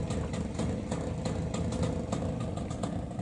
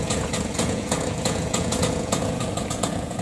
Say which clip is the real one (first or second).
first